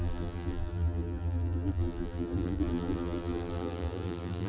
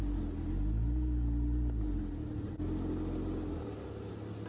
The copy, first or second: first